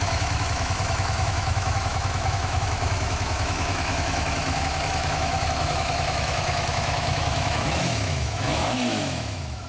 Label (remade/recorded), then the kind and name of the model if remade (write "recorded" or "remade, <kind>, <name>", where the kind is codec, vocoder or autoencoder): remade, autoencoder, DAC-VAE